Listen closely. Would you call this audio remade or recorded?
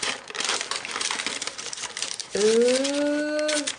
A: recorded